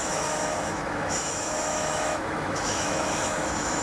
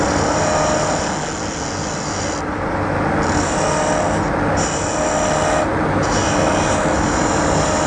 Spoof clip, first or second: first